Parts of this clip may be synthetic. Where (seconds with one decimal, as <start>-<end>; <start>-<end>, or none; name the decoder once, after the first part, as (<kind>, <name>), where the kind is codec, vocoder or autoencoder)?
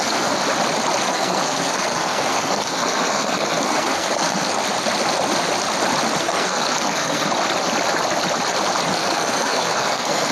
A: 0.0-0.4 (codec, SNAC); 1.0-4.6; 6.2-7.3; 8.9-10.3